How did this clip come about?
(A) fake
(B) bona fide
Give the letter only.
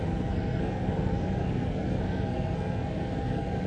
A